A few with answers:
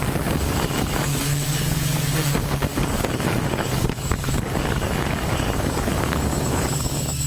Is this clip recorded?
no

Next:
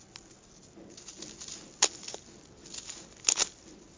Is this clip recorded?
yes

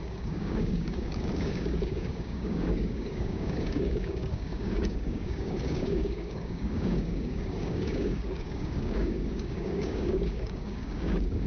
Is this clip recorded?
no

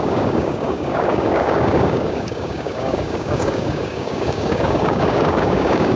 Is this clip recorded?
no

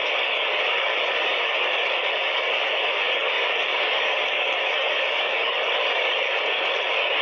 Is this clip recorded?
no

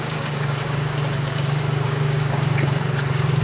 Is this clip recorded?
no